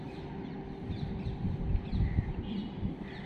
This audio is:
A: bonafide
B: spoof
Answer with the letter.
A